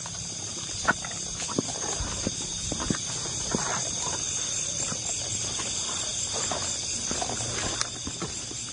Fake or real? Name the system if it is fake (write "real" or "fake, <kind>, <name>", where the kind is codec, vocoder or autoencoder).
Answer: real